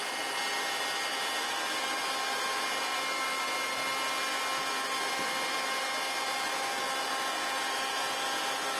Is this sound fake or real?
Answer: real